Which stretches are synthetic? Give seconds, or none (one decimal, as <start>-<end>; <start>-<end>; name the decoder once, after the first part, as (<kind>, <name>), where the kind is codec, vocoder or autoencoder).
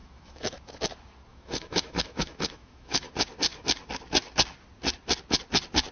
0.0-0.7 (autoencoder, DAC-VAE); 1.3-3.1